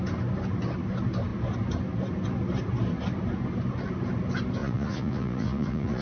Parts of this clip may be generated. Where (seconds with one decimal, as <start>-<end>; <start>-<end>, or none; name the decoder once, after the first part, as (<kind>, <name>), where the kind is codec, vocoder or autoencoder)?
4.6-6.0 (vocoder, Vocos)